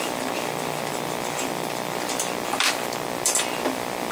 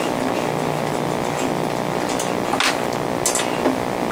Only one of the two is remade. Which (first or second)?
first